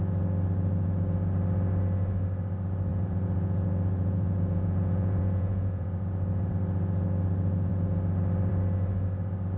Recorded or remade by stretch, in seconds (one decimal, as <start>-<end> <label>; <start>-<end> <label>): 0.0-2.9 recorded; 2.9-6.5 remade; 6.5-9.6 recorded